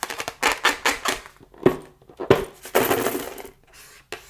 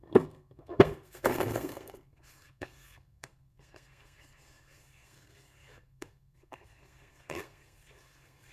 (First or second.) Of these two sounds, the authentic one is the first